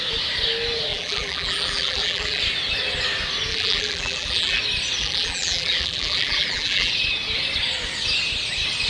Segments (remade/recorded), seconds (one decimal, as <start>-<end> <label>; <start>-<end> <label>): 0.0-0.9 recorded; 0.9-2.4 remade; 2.4-3.5 recorded; 3.5-4.6 remade; 4.6-5.0 recorded; 5.0-6.9 remade; 6.9-8.9 recorded